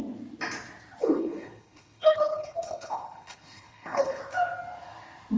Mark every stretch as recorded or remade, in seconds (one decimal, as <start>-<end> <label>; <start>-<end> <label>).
0.0-1.0 recorded; 1.0-4.2 remade; 4.2-5.4 recorded